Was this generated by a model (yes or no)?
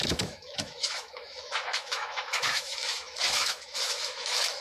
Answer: yes